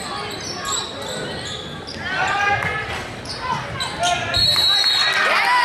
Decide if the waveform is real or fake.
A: real